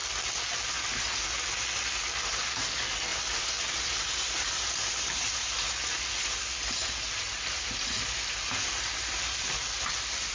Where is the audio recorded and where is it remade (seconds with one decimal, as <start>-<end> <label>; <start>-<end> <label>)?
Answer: 0.0-10.3 recorded